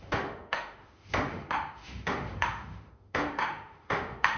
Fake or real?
fake